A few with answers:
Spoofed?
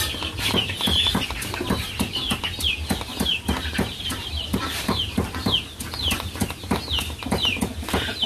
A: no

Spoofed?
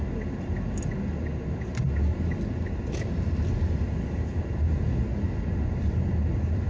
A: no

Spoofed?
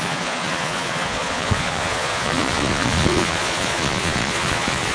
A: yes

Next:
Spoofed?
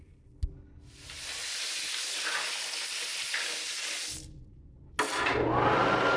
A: no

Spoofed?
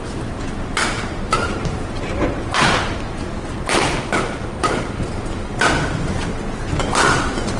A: no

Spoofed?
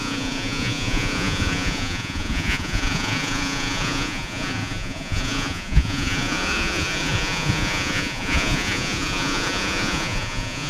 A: yes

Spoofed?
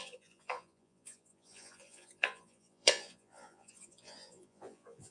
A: yes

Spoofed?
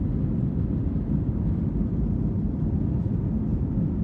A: no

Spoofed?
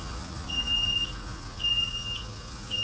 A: yes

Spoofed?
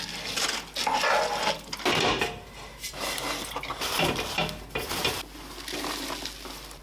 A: no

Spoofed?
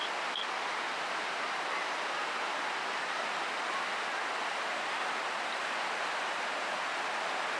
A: no